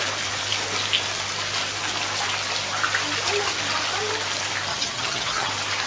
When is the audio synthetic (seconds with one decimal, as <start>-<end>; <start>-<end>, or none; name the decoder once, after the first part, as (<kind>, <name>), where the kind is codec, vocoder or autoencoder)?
4.7-5.5 (vocoder, HiFi-GAN)